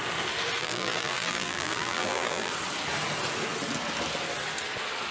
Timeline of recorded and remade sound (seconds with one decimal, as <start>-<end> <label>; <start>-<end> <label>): 0.0-0.6 recorded; 0.6-2.5 remade; 2.5-5.1 recorded